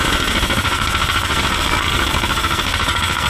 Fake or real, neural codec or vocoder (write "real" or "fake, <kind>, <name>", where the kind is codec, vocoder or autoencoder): fake, codec, SNAC